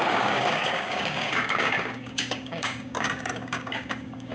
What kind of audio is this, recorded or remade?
remade